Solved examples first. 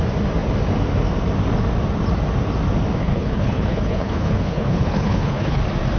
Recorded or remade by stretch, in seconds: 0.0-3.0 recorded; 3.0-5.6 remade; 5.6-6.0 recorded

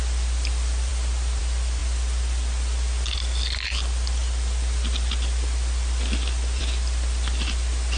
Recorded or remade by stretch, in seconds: 0.0-8.0 recorded

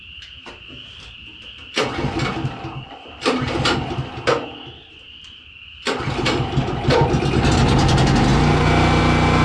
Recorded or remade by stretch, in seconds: 0.0-9.4 recorded